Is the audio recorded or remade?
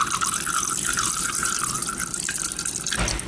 recorded